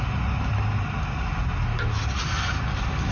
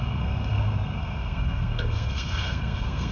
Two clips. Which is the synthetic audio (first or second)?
second